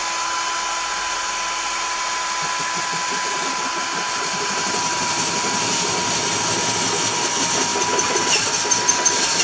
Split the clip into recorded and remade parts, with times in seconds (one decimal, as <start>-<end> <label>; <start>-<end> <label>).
0.0-9.4 recorded